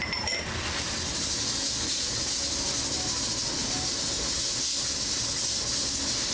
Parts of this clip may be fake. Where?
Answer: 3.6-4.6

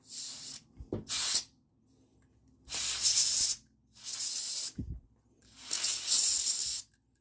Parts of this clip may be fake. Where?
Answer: none

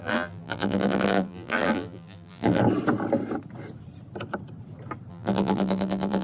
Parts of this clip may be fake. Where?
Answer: 0.0-2.6; 5.1-6.2

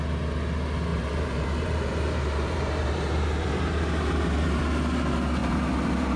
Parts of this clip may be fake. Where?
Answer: 0.9-4.6; 5.4-6.2

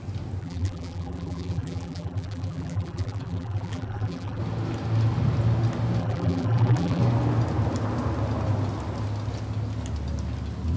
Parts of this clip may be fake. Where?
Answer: 0.4-4.4; 6.0-7.0

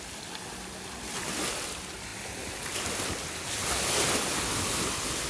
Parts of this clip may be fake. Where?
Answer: none